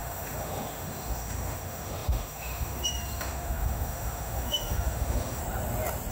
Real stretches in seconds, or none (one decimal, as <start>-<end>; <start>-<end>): 5.4-6.1